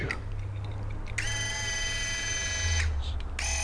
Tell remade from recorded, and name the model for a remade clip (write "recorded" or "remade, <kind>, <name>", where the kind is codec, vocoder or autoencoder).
recorded